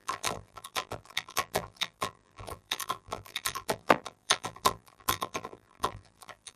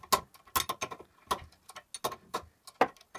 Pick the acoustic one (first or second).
second